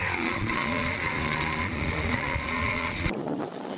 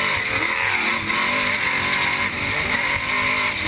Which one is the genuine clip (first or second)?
second